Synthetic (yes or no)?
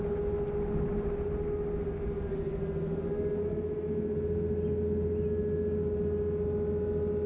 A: no